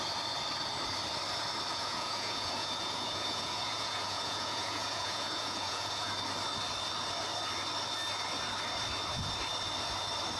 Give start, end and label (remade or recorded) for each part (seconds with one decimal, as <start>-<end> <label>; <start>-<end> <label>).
0.0-1.7 recorded; 1.7-6.1 remade; 6.1-10.4 recorded